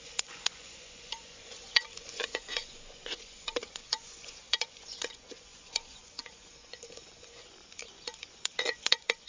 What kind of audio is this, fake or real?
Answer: fake